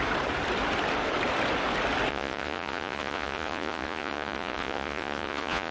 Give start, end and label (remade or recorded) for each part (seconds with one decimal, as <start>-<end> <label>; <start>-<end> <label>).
0.0-2.1 recorded; 2.1-5.7 remade